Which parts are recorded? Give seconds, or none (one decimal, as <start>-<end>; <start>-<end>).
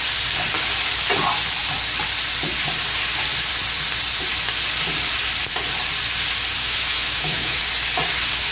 0.0-6.6; 7.6-8.5